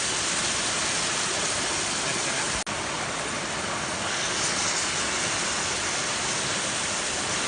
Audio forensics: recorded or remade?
recorded